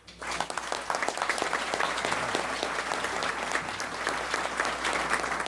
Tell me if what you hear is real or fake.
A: real